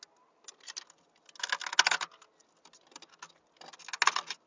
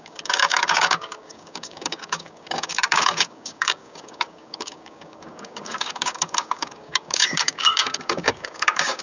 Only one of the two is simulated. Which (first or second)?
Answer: second